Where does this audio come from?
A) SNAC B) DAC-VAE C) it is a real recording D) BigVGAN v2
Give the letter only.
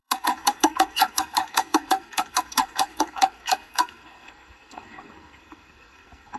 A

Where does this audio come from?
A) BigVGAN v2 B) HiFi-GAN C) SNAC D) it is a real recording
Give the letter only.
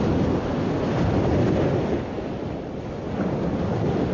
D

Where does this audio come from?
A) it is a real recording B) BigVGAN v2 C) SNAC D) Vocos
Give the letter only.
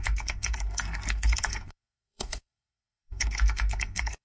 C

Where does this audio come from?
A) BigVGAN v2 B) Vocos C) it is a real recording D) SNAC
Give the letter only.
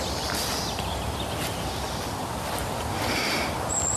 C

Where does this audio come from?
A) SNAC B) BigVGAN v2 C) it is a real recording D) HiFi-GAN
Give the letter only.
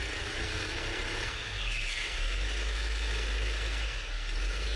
A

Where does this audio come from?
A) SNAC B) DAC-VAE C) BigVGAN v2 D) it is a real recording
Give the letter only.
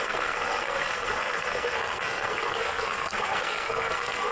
A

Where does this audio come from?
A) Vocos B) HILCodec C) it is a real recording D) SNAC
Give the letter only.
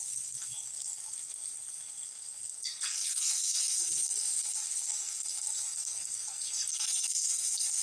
D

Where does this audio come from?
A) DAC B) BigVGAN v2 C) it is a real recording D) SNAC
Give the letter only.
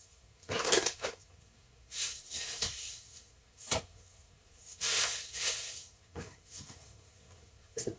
D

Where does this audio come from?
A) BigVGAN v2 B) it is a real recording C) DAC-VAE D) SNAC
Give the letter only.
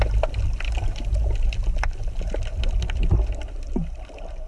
B